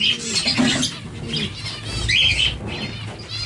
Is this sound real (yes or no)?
yes